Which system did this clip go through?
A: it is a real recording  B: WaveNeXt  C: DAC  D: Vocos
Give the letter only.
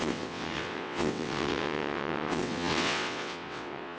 B